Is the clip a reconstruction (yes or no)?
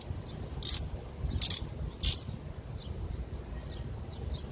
no